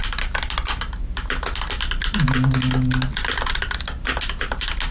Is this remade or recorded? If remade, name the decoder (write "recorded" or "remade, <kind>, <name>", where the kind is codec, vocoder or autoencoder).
recorded